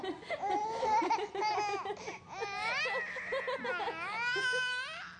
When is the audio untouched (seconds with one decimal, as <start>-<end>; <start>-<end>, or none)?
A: 0.0-0.6; 1.5-2.1; 2.8-5.2